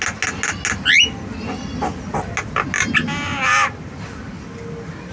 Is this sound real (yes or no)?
yes